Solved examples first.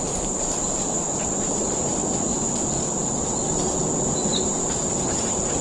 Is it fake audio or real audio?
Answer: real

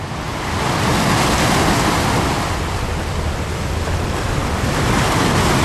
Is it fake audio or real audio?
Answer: real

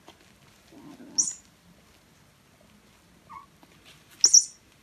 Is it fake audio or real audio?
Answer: real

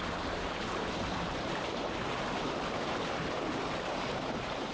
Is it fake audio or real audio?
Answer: fake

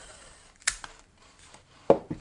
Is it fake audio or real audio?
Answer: fake